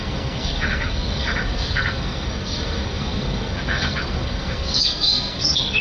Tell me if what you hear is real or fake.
fake